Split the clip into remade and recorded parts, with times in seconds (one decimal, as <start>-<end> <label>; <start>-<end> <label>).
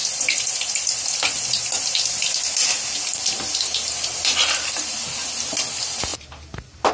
0.0-2.1 remade; 2.1-3.2 recorded; 3.2-5.0 remade; 5.0-6.9 recorded